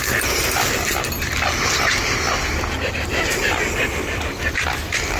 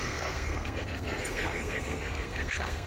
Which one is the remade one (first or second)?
second